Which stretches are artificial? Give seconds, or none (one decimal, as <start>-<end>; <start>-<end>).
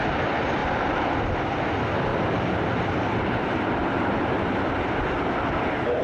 0.6-1.3; 2.1-4.4